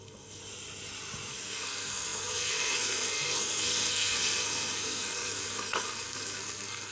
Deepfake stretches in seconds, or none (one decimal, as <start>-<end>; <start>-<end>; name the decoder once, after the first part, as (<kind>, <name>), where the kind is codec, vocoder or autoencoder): 0.0-0.4 (codec, SNAC); 1.3-6.9

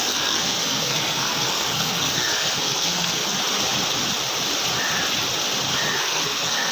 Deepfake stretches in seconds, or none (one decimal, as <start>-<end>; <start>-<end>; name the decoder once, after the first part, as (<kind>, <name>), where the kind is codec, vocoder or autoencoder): 0.0-3.2 (codec, SNAC); 6.0-6.7

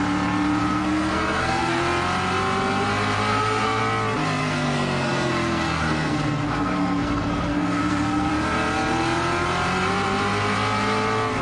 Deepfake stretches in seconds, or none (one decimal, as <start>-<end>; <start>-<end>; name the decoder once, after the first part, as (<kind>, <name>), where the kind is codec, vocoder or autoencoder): 0.6-1.8 (codec, SNAC); 3.3-3.8; 4.4-8.3